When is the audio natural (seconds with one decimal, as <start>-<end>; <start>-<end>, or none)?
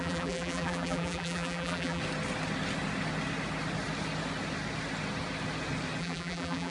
2.0-6.0